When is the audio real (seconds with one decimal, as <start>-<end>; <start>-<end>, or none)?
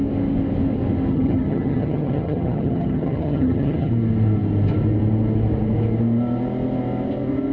0.0-1.1; 3.9-7.5